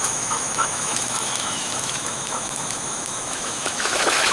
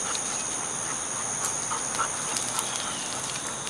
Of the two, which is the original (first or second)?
second